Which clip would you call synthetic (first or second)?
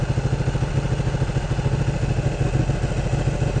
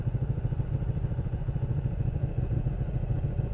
second